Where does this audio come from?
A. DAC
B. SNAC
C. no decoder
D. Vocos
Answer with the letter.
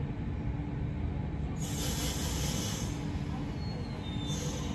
C